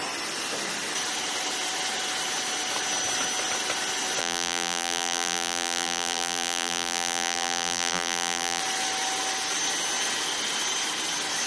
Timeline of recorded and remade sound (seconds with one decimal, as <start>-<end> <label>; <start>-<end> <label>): 0.0-4.2 recorded; 4.2-8.6 remade; 8.6-11.5 recorded